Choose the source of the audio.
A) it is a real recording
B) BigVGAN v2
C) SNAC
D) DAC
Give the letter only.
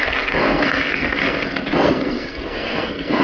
C